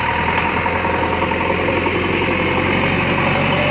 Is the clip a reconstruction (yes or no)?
no